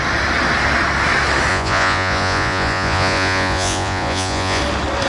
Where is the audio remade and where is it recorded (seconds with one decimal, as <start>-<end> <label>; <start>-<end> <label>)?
0.0-1.5 recorded; 1.5-4.6 remade; 4.6-5.1 recorded